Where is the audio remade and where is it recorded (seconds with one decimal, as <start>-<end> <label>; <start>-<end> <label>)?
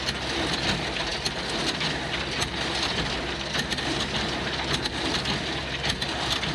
0.0-6.5 recorded